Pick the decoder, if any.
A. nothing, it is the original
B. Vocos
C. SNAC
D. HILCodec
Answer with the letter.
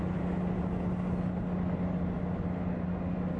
A